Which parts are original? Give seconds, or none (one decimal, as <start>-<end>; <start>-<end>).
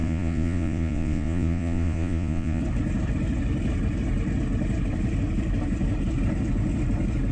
2.6-7.3